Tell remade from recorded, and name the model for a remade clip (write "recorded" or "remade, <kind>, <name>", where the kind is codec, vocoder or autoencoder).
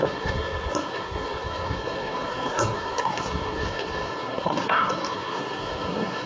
remade, codec, SNAC